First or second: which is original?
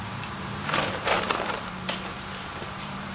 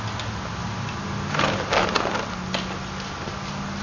second